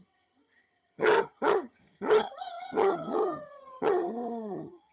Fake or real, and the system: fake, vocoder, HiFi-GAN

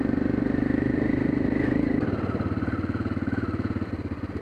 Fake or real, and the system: real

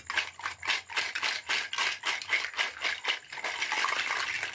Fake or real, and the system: real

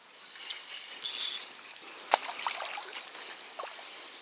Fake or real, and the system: real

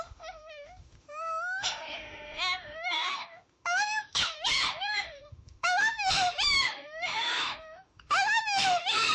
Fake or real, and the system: fake, autoencoder, DAC-VAE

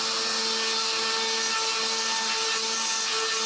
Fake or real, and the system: real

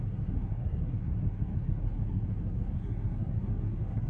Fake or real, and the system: fake, codec, SNAC